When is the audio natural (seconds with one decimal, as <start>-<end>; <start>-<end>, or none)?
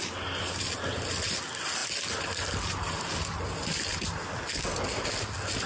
0.0-5.7